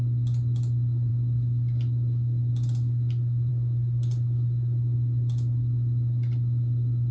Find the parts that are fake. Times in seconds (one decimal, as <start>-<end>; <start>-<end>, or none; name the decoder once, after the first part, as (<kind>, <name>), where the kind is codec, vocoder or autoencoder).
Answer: none